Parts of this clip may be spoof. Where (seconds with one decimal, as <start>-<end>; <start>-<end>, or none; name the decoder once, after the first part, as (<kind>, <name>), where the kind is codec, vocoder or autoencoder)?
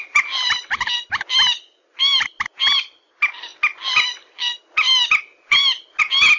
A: none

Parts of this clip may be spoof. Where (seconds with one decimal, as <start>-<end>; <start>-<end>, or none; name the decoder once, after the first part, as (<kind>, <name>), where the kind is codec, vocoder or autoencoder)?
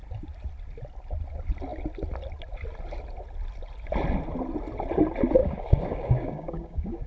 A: 5.4-7.1 (codec, DAC)